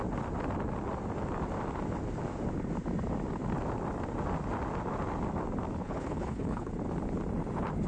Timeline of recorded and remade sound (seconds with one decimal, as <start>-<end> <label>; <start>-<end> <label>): 0.0-5.8 recorded; 5.8-6.7 remade; 6.7-7.9 recorded